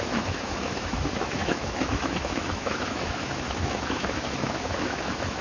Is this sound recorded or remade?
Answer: remade